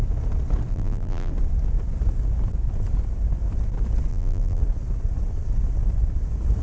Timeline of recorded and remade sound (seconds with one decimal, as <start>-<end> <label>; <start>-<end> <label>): 0.0-0.7 recorded; 0.7-1.3 remade; 1.3-4.1 recorded; 4.1-4.6 remade; 4.6-6.6 recorded